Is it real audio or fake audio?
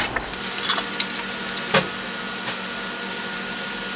real